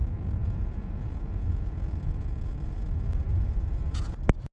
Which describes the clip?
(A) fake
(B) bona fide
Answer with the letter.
B